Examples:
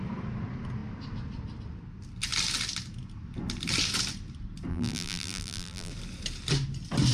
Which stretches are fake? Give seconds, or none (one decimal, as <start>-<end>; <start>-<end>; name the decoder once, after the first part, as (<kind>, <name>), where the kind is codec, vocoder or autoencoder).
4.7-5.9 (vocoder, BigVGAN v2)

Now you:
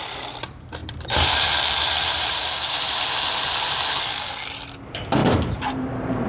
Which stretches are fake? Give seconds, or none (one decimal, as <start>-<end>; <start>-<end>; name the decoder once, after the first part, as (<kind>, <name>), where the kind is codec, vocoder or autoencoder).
0.8-3.8 (vocoder, BigVGAN v2); 5.2-6.3

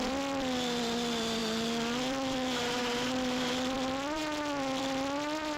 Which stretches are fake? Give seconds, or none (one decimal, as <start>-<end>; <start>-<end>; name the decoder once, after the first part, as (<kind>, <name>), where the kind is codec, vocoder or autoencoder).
0.0-4.2 (vocoder, BigVGAN v2); 4.8-5.6

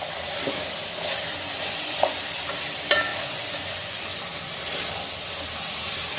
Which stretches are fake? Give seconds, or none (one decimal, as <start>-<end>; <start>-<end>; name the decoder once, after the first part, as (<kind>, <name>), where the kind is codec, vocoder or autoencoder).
1.3-2.2 (vocoder, Vocos); 3.1-4.2

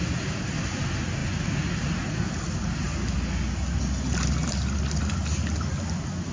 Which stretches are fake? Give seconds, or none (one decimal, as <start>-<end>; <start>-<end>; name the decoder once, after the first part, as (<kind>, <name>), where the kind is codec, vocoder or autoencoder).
none